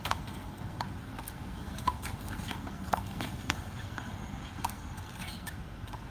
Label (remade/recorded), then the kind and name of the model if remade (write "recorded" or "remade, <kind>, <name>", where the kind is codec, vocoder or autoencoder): remade, codec, SNAC